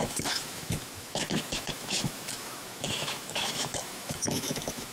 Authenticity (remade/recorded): remade